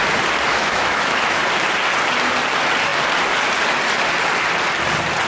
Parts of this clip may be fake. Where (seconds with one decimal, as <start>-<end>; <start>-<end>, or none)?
0.5-1.4